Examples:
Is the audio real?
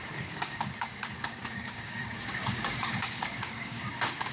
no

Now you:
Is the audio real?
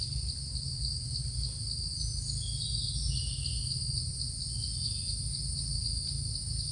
yes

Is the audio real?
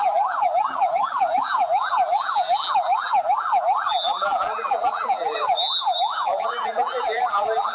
no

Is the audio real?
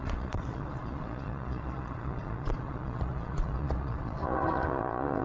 no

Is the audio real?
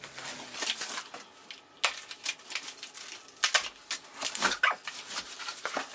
yes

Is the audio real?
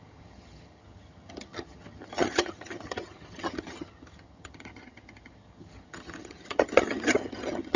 no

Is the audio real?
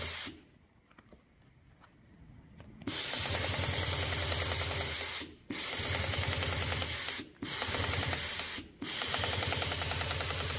yes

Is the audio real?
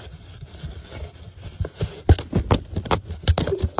yes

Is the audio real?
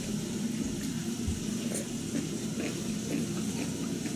yes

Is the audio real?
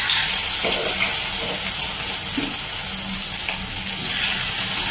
yes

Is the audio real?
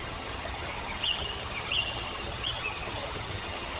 no